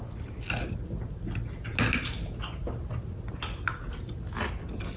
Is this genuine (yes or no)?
yes